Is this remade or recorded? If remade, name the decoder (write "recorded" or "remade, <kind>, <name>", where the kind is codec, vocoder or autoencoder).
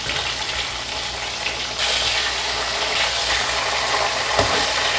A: recorded